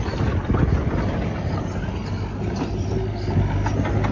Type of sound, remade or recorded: recorded